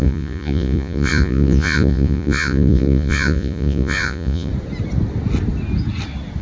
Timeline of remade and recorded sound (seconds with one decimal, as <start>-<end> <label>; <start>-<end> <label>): 0.0-4.5 remade; 4.5-6.4 recorded